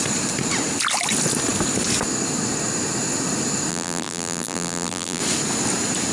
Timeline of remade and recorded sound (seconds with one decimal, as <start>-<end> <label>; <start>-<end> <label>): 0.0-3.7 recorded; 3.7-5.2 remade; 5.2-6.1 recorded